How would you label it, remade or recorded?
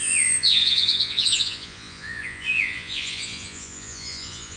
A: remade